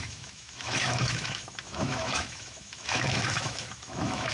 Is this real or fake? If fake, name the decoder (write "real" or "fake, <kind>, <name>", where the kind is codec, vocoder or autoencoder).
fake, autoencoder, DAC-VAE